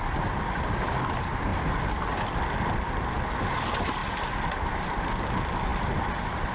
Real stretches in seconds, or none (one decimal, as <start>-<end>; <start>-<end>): 0.0-6.5